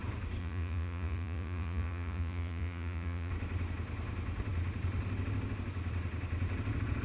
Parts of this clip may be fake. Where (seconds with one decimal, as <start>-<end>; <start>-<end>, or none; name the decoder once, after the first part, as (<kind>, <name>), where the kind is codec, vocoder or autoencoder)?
0.4-3.3 (vocoder, Vocos)